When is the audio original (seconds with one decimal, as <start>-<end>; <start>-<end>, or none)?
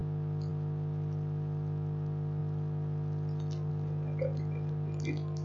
0.0-5.4